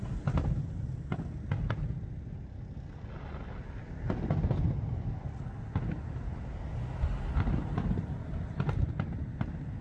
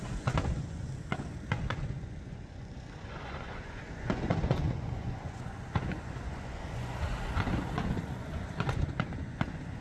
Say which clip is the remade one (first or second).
second